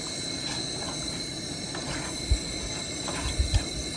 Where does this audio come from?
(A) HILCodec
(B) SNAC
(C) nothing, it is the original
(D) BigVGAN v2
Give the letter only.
C